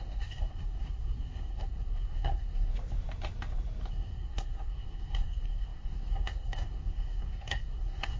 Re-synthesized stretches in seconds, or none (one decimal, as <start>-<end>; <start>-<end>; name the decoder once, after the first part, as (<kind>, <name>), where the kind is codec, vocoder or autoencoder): 0.0-2.7 (codec, SNAC); 3.9-8.2